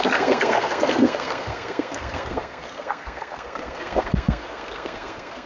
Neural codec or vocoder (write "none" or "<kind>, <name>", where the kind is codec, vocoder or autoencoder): codec, SNAC